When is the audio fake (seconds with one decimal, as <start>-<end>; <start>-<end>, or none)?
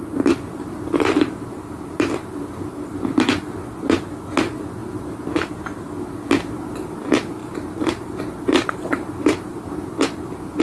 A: 0.0-2.9; 4.8-5.5; 7.4-10.6